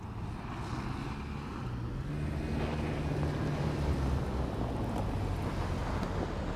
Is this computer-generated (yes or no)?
no